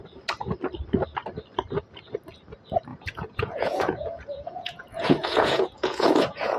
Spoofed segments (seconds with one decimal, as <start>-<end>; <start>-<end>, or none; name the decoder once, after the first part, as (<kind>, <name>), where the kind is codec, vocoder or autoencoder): 2.9-6.6 (vocoder, Vocos)